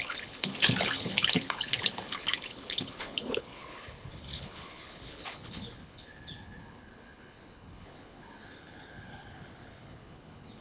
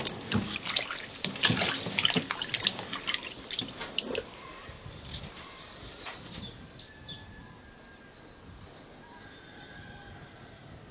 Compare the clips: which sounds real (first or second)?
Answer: second